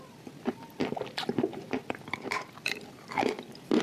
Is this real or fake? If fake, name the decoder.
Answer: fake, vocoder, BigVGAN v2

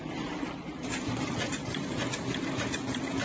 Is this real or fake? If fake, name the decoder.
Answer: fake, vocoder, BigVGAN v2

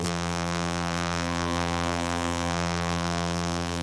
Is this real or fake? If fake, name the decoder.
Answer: fake, vocoder, BigVGAN v2